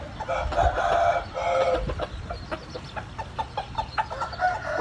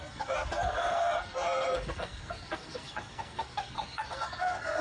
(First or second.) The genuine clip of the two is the first